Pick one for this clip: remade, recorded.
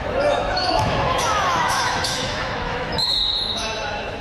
remade